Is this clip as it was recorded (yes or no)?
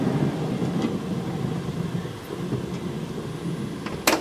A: yes